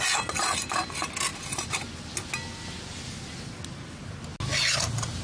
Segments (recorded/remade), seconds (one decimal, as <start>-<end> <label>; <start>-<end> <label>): 0.0-5.2 recorded

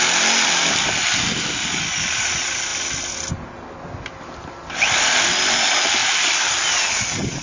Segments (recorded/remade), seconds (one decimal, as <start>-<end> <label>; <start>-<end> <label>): 0.0-6.0 recorded; 6.0-6.5 remade; 6.5-7.4 recorded